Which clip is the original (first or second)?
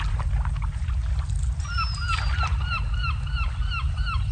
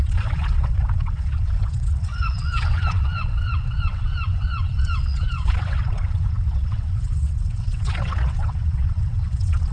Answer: first